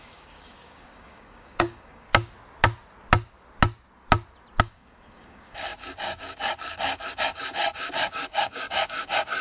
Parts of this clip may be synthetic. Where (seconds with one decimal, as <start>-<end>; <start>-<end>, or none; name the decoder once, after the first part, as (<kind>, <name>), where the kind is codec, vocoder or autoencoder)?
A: 0.0-2.1 (codec, DAC); 4.6-9.4